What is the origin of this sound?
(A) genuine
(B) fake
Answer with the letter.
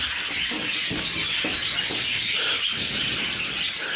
A